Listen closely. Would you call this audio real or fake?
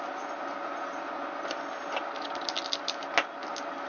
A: real